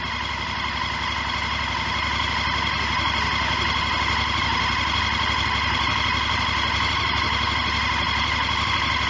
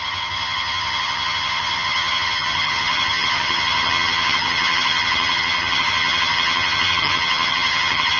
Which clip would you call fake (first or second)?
second